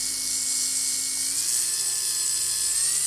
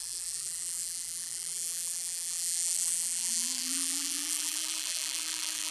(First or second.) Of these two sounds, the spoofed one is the second